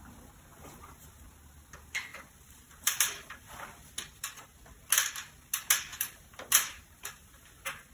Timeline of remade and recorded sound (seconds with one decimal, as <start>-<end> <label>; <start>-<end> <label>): 0.0-0.5 recorded; 0.5-1.1 remade; 1.1-2.1 recorded; 2.1-3.5 remade; 3.5-5.9 recorded; 5.9-7.5 remade; 7.5-7.9 recorded